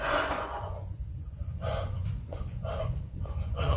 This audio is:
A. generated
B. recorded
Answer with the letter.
A